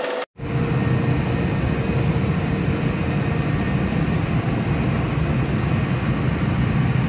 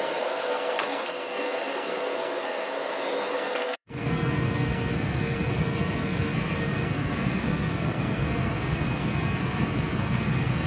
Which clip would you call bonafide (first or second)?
first